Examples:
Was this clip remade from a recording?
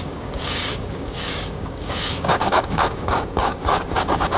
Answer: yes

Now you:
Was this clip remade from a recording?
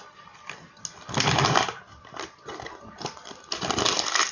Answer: no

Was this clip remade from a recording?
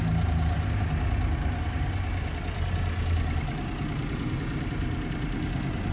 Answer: no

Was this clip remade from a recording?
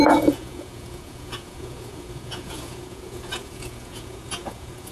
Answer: yes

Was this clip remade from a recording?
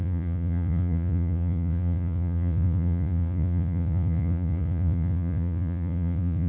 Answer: yes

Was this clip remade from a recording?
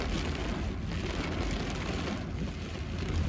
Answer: no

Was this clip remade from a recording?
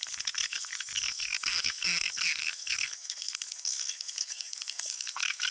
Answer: yes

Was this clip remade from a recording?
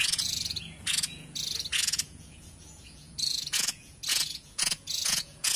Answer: yes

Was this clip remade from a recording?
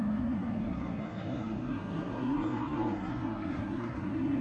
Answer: yes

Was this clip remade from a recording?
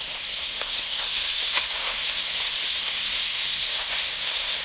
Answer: yes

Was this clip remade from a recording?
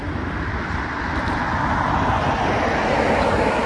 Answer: no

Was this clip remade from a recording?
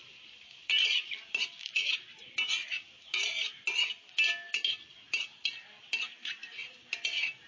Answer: no